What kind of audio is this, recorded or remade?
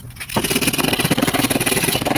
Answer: recorded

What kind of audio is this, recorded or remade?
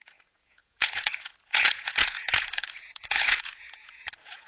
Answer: remade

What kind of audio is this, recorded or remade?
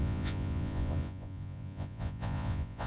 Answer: remade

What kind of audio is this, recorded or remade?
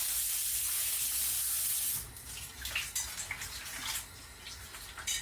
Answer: recorded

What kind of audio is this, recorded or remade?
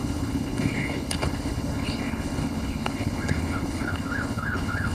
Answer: remade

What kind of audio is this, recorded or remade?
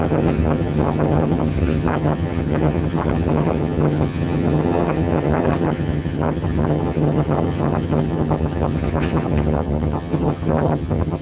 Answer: remade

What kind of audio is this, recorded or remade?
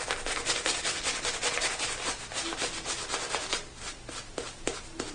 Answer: recorded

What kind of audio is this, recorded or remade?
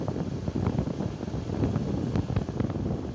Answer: recorded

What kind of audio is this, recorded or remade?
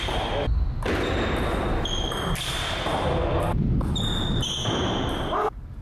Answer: recorded